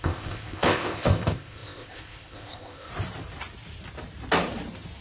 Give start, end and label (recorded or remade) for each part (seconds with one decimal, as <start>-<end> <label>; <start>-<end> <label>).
0.0-2.9 remade; 2.9-5.0 recorded